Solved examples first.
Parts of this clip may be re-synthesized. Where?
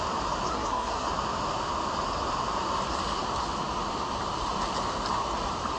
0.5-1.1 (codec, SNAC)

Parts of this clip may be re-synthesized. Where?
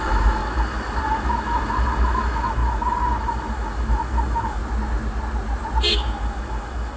0.0-4.6 (autoencoder, DAC-VAE); 5.9-7.0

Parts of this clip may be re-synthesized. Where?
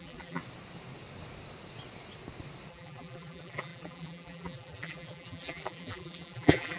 0.0-0.4 (vocoder, BigVGAN v2); 2.7-6.8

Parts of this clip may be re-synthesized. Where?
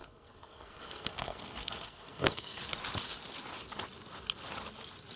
0.0-2.6 (codec, SNAC)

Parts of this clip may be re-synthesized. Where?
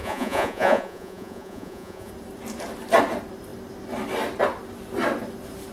0.0-2.1 (vocoder, Vocos)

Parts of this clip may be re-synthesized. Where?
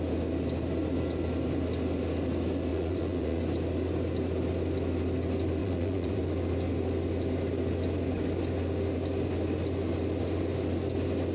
2.7-3.4 (vocoder, Vocos); 5.6-6.2